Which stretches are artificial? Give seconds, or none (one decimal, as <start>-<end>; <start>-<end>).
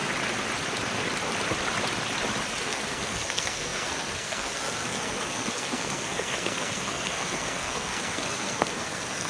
2.6-9.3